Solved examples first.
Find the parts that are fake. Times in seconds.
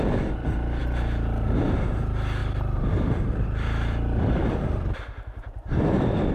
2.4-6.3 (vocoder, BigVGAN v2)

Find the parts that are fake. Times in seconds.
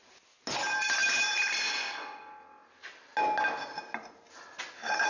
1.0-1.7 (vocoder, BigVGAN v2)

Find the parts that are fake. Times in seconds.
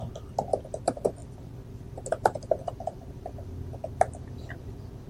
none